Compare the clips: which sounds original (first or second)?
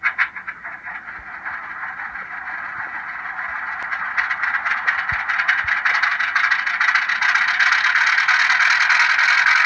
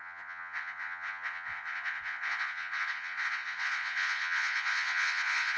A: first